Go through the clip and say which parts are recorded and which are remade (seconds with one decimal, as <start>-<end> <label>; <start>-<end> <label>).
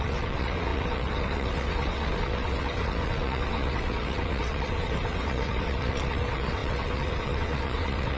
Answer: 0.0-8.2 remade